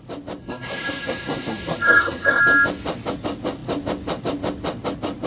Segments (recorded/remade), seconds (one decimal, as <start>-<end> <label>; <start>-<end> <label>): 0.0-0.4 recorded; 0.4-2.4 remade; 2.4-5.3 recorded